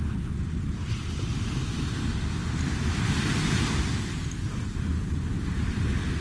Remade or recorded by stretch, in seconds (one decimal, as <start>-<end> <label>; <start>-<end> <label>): 0.0-2.4 recorded; 2.4-6.2 remade